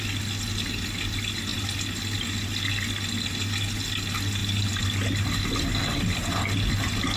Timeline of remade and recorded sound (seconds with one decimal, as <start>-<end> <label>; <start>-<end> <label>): 0.0-7.2 recorded

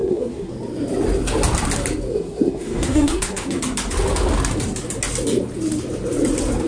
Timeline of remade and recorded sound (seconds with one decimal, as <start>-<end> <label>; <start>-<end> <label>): 0.0-0.5 remade; 0.5-2.1 recorded; 2.1-3.6 remade; 3.6-6.7 recorded